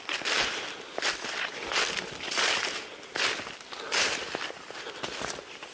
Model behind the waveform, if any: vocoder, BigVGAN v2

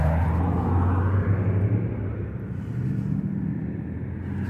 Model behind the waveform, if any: none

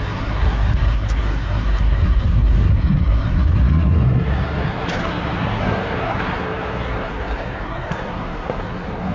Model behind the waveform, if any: codec, SNAC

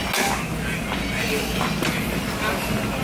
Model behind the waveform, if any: none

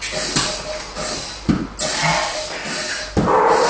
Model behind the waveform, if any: none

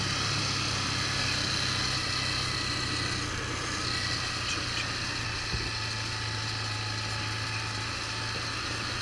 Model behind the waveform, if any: none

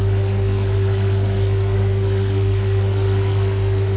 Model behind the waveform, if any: codec, SNAC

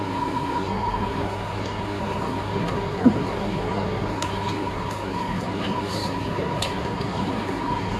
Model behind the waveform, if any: codec, SNAC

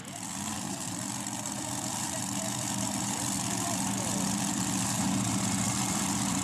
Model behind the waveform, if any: vocoder, BigVGAN v2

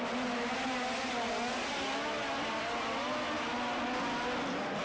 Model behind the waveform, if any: none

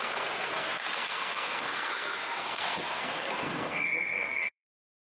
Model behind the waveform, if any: codec, SNAC